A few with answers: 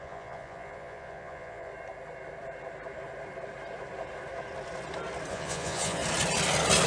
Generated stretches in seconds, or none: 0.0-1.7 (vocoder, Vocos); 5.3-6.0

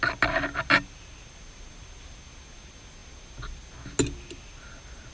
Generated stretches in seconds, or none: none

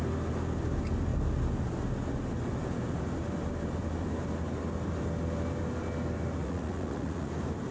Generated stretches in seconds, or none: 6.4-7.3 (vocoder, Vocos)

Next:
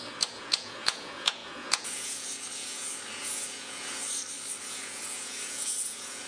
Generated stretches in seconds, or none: 0.0-4.0 (vocoder, Vocos); 4.6-6.3

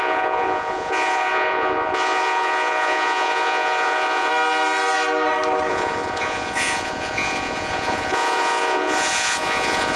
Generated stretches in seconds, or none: 0.0-4.3 (vocoder, Vocos); 5.7-10.0

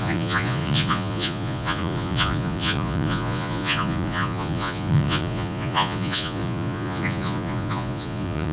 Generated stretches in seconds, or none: 0.0-8.5 (vocoder, Vocos)

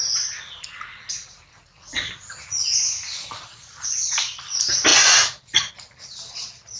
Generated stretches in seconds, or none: none